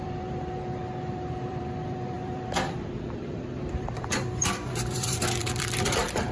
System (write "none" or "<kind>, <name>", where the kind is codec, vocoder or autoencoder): vocoder, BigVGAN v2